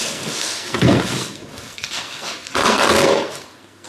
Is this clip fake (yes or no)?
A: yes